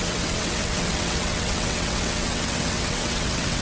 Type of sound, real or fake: fake